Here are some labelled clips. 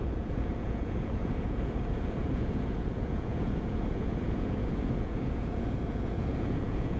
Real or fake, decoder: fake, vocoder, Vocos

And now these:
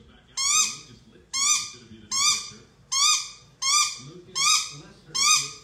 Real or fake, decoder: real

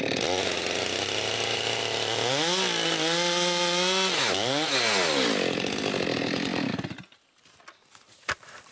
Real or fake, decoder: real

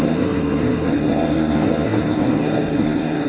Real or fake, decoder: fake, codec, SNAC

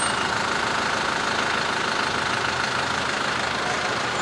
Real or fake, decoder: real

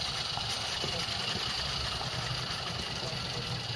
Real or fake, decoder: real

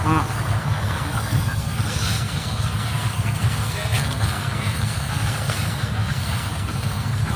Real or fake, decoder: fake, codec, SNAC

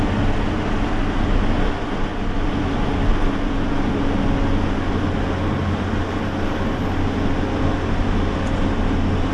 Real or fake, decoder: real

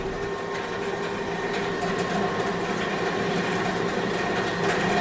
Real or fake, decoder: real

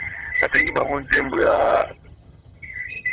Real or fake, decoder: fake, vocoder, HiFi-GAN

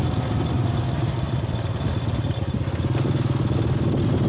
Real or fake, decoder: real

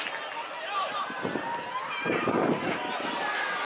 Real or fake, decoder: real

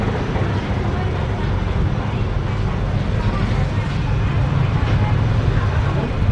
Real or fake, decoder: real